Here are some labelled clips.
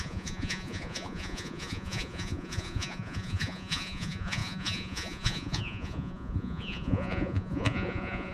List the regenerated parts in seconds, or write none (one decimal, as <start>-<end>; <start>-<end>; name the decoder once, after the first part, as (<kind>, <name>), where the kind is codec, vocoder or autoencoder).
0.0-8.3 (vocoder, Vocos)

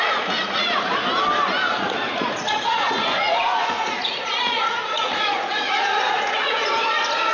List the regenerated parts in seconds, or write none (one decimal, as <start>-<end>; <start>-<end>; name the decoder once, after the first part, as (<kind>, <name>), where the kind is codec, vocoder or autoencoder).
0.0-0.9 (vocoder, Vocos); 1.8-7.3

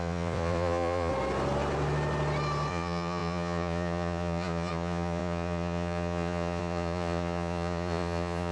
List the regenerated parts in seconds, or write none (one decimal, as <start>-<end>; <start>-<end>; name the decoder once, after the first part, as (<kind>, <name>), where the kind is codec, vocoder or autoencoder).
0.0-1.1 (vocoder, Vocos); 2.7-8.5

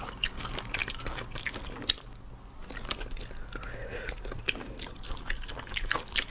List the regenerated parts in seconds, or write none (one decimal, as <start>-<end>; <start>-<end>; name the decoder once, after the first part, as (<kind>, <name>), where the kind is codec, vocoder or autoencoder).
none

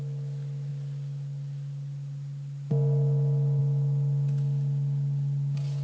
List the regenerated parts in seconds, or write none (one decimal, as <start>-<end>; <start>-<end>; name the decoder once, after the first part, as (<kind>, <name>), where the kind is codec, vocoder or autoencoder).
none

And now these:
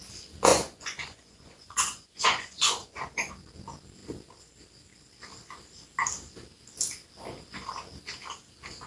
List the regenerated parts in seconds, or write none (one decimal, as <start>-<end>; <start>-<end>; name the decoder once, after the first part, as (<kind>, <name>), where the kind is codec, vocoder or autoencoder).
0.5-3.3 (vocoder, Vocos)